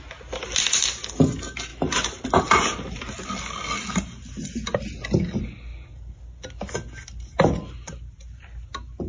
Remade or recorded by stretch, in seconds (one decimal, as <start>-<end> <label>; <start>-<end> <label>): 0.0-9.1 recorded